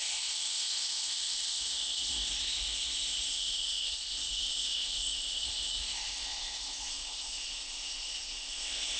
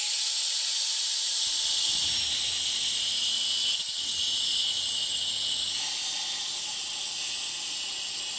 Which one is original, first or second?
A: second